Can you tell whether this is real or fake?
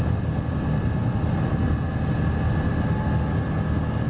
real